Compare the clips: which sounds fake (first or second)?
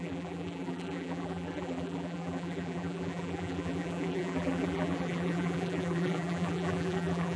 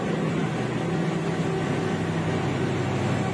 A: first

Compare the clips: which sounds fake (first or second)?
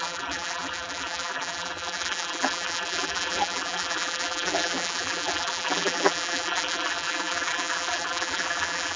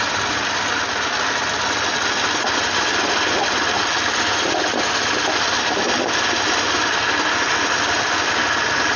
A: first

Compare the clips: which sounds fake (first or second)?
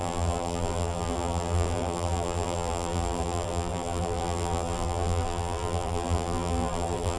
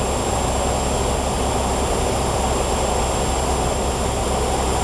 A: first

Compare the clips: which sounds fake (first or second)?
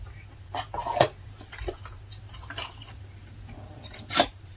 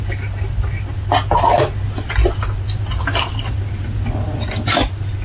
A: first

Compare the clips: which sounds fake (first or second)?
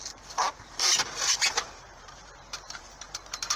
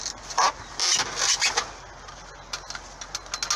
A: first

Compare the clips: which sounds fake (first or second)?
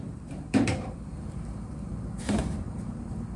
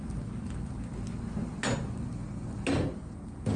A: first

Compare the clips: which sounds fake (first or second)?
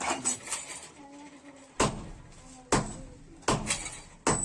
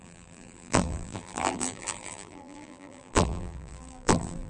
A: second